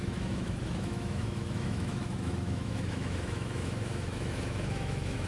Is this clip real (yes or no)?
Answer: no